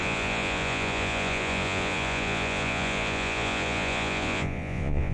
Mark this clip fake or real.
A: fake